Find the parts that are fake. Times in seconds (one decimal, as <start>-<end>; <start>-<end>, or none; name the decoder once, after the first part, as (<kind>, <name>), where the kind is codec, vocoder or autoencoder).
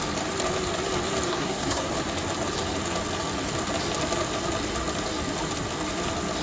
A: 1.3-1.9 (codec, SNAC)